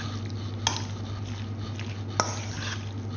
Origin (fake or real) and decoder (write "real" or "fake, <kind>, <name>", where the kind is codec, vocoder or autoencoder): real